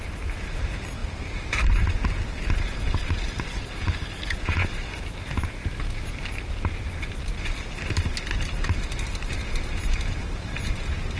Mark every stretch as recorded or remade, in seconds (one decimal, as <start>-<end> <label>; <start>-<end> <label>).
0.0-11.2 recorded